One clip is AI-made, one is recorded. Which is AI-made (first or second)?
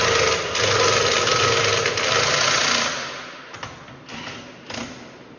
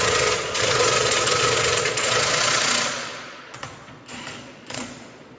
second